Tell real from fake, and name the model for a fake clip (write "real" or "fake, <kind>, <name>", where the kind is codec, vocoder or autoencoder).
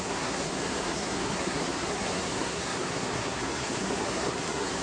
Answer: fake, codec, SNAC